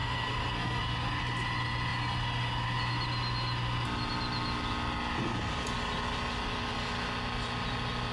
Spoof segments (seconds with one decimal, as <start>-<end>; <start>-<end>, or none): 0.0-0.8